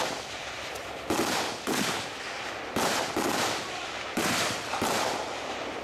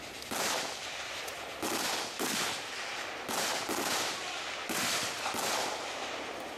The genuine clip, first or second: second